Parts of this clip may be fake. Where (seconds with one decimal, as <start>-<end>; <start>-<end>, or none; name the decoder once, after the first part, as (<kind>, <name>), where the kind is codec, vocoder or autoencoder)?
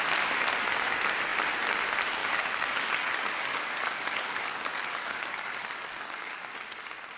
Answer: 2.2-6.5 (codec, DAC)